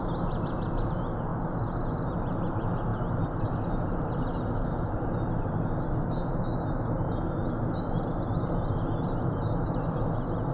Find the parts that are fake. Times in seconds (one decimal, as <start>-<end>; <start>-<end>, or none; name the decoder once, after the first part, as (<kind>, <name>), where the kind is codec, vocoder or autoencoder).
none